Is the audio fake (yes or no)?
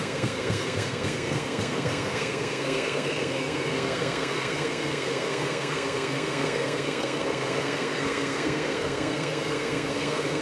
yes